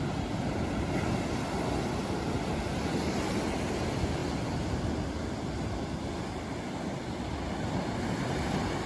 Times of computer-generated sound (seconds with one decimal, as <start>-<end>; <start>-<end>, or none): none